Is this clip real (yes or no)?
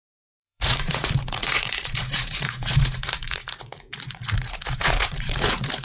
no